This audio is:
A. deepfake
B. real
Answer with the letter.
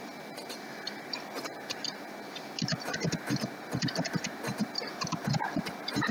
B